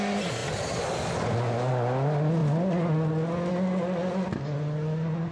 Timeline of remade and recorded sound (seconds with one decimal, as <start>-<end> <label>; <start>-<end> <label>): 0.0-5.3 recorded